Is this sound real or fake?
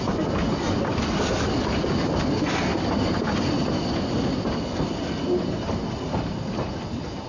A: real